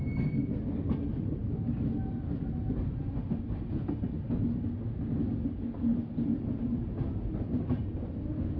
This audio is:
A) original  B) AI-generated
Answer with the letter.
A